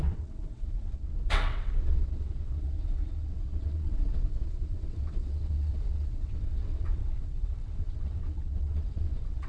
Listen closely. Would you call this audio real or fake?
fake